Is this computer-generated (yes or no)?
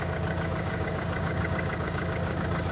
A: yes